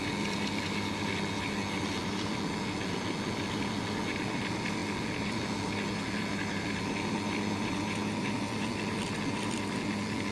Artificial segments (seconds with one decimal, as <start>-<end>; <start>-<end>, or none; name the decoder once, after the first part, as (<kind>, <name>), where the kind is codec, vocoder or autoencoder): none